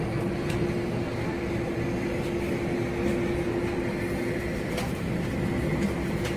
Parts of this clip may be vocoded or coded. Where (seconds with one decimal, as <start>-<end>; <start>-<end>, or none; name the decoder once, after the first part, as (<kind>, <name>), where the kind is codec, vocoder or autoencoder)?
none